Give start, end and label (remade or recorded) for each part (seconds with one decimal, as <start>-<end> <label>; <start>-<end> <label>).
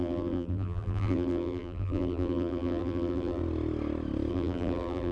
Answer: 0.0-3.4 remade; 3.4-4.3 recorded; 4.3-5.1 remade